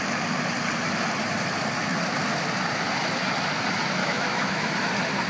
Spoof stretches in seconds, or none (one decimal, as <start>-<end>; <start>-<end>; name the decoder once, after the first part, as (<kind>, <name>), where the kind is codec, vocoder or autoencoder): 4.0-4.8 (autoencoder, DAC-VAE)